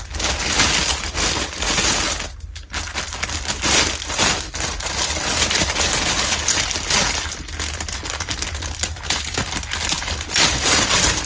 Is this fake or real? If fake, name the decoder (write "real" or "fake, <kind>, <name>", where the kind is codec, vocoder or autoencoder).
real